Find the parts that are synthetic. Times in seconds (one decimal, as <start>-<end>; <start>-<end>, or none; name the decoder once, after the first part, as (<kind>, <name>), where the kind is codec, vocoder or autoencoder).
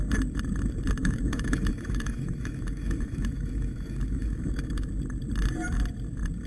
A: 1.0-4.9 (autoencoder, DAC-VAE)